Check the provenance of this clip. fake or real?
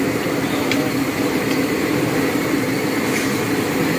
real